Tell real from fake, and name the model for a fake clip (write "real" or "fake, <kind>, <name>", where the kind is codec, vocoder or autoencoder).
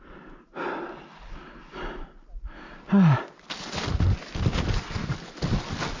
real